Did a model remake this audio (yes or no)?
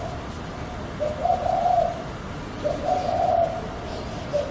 no